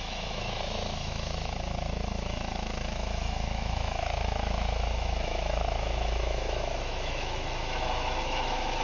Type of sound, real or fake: fake